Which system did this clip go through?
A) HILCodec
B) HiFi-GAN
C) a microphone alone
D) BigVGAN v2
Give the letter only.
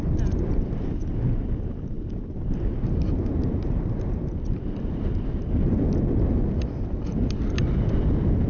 C